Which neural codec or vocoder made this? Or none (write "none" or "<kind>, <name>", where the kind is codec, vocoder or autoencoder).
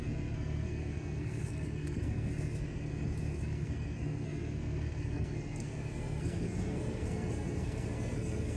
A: codec, SNAC